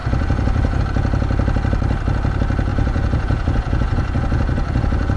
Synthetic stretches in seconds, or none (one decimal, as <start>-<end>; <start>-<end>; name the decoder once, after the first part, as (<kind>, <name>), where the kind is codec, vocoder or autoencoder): 0.0-0.8 (vocoder, Vocos); 2.7-5.2